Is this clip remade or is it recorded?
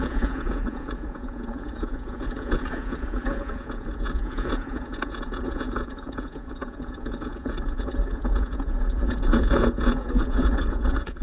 remade